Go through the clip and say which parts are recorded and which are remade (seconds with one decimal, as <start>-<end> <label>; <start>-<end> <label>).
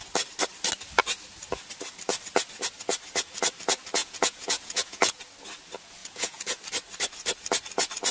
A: 0.0-4.0 recorded; 4.0-5.2 remade; 5.2-6.0 recorded; 6.0-6.6 remade; 6.6-8.1 recorded